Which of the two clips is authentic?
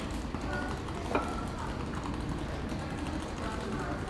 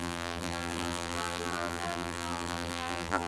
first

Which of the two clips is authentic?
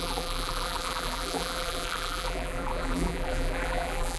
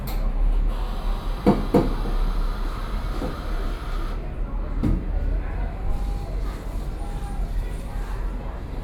second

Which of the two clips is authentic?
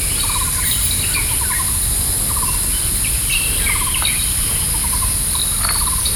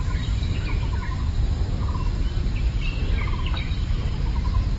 first